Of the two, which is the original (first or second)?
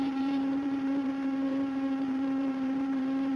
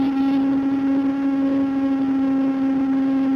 second